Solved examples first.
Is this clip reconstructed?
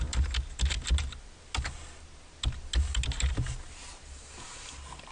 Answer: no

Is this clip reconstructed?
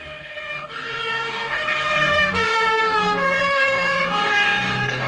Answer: yes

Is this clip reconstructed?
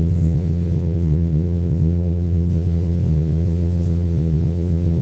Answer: yes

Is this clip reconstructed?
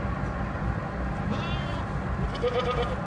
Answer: no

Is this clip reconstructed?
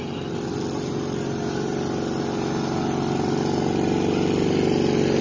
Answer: no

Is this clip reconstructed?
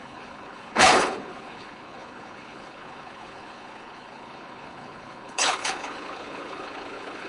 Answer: yes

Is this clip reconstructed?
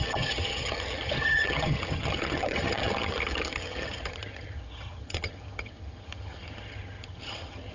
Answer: yes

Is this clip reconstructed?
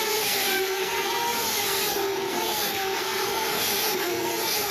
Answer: yes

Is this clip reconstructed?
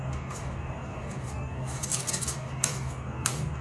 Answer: yes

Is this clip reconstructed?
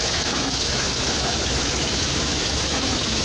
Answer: yes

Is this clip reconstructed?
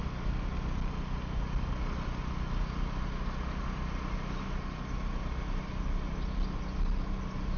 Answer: no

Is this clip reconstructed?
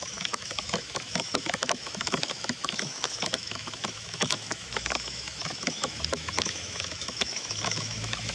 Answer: yes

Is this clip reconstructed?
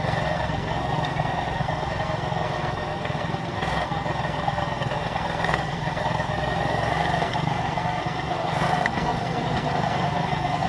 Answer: yes